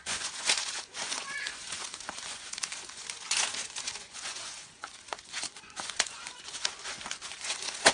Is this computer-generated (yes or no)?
yes